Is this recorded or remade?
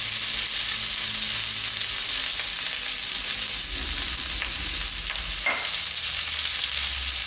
recorded